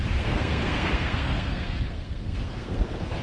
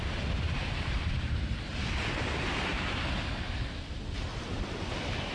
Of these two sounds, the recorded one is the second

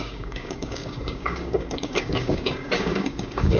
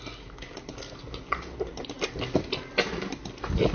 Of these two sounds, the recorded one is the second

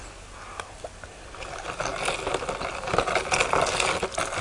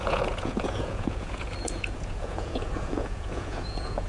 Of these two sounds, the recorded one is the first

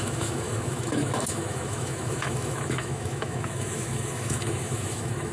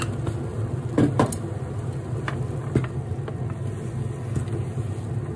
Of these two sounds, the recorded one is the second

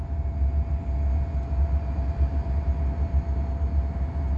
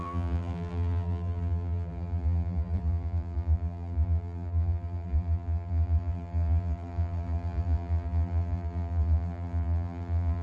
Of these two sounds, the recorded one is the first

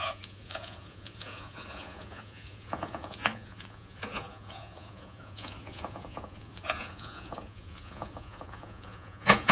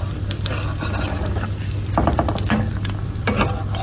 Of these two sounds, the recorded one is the second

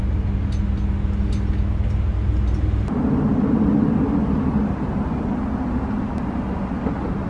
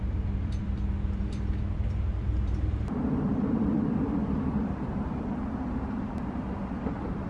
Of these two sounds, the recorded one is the first